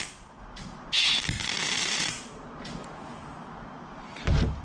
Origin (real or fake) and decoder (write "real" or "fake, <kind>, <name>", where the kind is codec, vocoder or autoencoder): real